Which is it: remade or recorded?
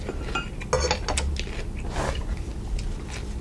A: recorded